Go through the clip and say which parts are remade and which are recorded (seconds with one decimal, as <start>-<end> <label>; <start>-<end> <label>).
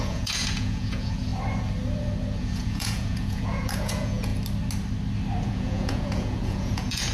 0.0-1.3 remade; 1.3-2.4 recorded; 2.4-4.3 remade; 4.3-5.4 recorded; 5.4-7.1 remade